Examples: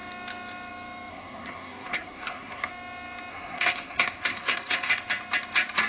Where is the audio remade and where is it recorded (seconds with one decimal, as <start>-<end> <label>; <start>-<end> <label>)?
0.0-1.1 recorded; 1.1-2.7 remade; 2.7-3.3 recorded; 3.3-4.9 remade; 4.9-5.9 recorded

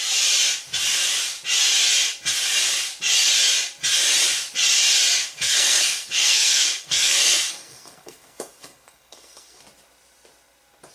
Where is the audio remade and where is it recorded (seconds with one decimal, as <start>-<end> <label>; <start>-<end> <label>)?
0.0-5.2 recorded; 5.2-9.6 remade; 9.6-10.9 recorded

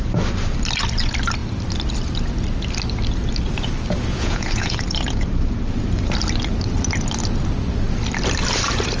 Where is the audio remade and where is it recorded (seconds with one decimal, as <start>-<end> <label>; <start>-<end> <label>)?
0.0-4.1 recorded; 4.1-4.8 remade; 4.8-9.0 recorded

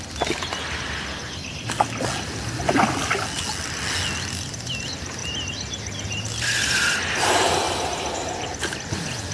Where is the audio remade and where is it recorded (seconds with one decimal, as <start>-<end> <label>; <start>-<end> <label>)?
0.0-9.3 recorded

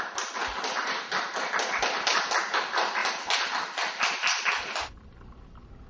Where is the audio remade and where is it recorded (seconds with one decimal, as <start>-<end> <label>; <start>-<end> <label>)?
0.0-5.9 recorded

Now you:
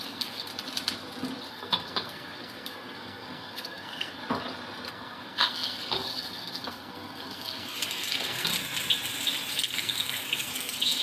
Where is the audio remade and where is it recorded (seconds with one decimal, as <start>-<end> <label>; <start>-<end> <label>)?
0.0-0.5 remade; 0.5-1.5 recorded; 1.5-4.2 remade; 4.2-4.9 recorded; 4.9-8.5 remade; 8.5-9.5 recorded; 9.5-11.0 remade

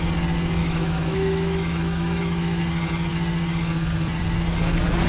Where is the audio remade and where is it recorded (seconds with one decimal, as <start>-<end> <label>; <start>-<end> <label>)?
0.0-0.6 recorded; 0.6-2.6 remade; 2.6-5.1 recorded